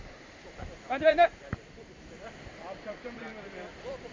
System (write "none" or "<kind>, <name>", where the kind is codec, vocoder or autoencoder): vocoder, BigVGAN v2